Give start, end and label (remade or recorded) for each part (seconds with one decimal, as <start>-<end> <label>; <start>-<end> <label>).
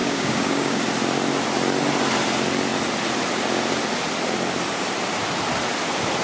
0.0-0.8 remade; 0.8-6.2 recorded